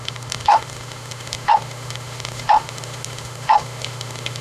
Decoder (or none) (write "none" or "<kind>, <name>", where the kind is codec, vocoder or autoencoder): autoencoder, DAC-VAE